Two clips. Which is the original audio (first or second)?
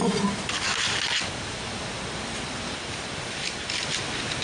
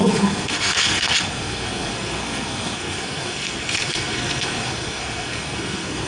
first